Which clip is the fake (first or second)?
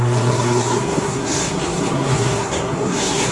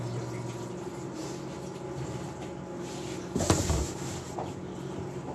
first